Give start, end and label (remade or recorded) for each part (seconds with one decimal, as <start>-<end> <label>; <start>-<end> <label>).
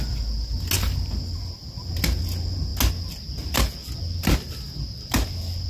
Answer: 0.0-5.7 recorded